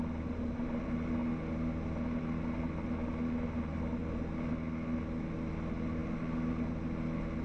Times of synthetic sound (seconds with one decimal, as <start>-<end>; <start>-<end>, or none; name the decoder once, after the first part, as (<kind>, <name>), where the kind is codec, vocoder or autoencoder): none